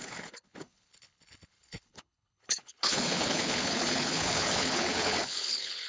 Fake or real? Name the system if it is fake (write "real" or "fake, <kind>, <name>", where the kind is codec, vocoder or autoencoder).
fake, codec, HILCodec